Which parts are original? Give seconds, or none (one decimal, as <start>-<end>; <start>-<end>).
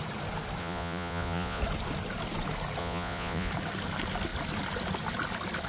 0.0-0.6; 1.6-2.8; 3.5-5.7